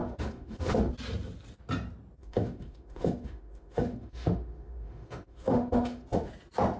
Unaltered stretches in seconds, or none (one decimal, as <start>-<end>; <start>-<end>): 0.9-2.2; 6.3-6.8